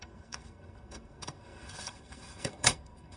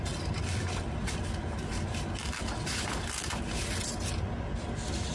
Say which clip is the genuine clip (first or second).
second